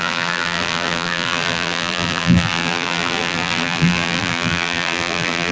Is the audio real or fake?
fake